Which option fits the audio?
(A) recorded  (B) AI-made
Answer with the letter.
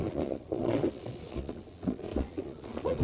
B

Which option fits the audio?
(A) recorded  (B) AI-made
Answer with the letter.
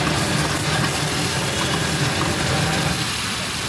A